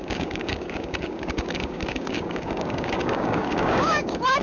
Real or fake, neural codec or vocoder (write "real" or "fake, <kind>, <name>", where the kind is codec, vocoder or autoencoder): fake, codec, DAC